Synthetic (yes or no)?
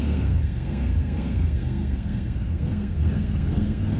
yes